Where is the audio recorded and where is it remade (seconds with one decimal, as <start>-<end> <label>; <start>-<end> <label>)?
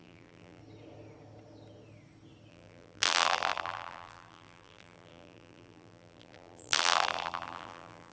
0.0-0.6 remade; 0.6-2.5 recorded; 2.5-8.1 remade